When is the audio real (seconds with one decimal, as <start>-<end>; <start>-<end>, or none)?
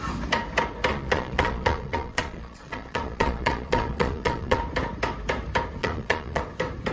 0.0-0.9; 4.6-5.8; 6.4-6.9